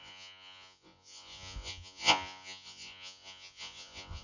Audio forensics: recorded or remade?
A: remade